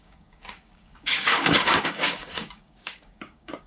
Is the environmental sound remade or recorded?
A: remade